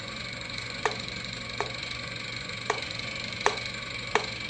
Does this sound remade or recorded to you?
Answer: remade